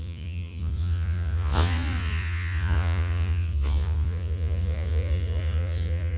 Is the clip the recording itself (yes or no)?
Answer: no